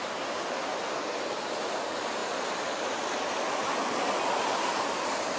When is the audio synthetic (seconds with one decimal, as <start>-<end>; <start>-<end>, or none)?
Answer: none